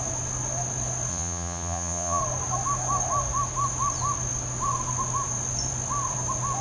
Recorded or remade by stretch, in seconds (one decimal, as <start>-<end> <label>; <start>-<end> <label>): 0.0-1.1 recorded; 1.1-2.2 remade; 2.2-6.6 recorded